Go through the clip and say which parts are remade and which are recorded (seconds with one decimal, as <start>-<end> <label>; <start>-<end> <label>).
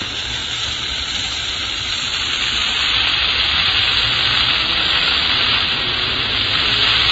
0.0-4.8 recorded; 4.8-5.3 remade; 5.3-7.1 recorded